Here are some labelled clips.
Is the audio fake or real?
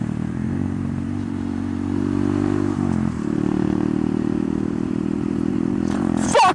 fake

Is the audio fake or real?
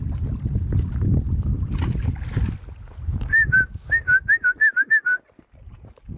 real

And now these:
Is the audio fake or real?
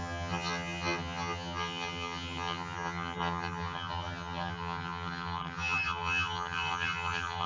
fake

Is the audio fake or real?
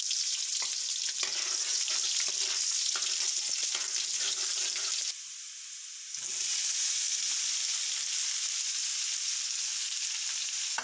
real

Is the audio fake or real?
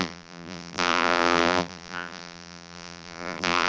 fake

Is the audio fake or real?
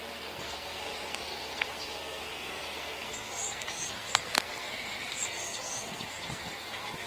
fake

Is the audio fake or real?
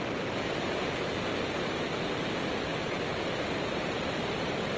real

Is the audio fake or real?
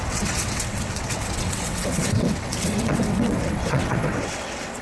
fake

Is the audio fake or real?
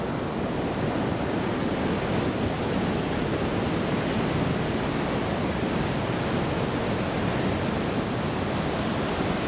real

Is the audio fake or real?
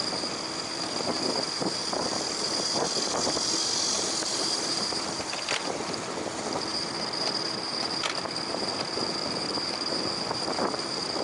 fake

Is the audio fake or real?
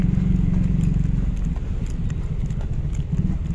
real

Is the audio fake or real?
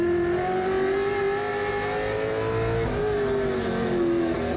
real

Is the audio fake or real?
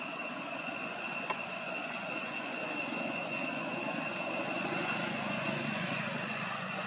fake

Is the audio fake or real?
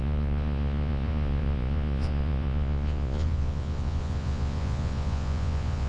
fake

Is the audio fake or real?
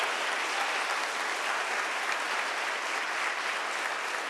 real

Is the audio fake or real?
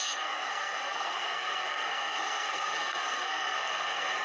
fake